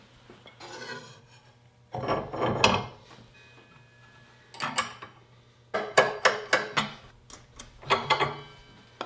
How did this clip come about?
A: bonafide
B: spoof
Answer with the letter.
A